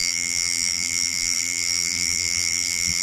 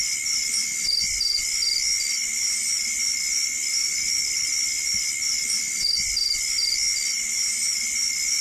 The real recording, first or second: second